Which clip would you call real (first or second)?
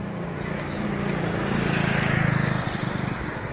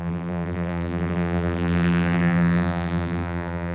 first